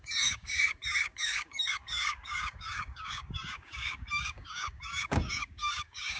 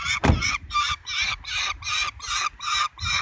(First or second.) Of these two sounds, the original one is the second